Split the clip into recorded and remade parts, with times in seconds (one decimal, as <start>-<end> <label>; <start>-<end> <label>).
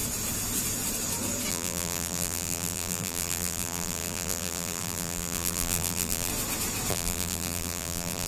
0.0-1.5 recorded; 1.5-6.3 remade; 6.3-6.9 recorded; 6.9-8.3 remade